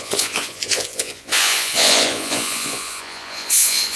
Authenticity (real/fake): fake